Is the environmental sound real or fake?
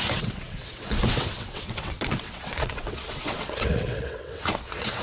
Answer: fake